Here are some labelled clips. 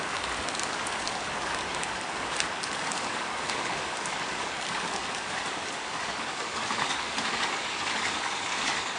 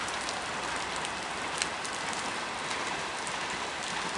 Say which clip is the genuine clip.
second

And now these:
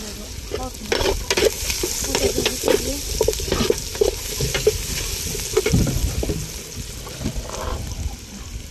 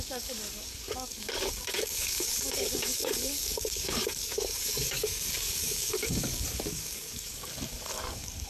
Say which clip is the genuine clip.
first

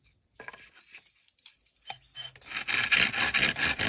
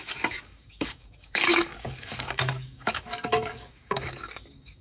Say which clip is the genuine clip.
first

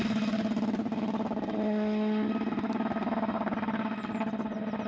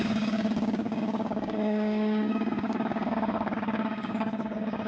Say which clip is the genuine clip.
first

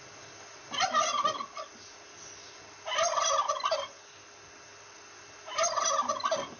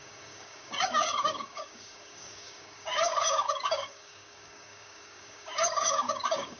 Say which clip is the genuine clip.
first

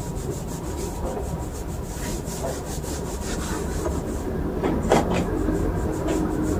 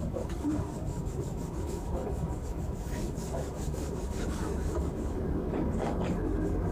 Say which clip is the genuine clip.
first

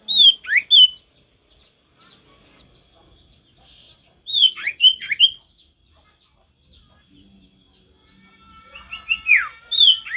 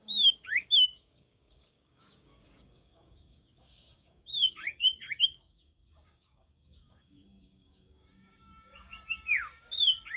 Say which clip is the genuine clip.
first